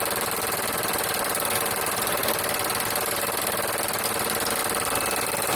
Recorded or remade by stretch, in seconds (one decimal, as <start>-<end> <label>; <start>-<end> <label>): 0.0-5.6 recorded